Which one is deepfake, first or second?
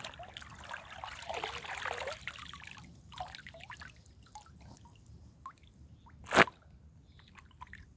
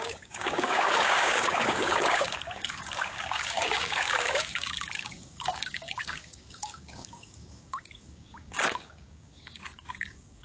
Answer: second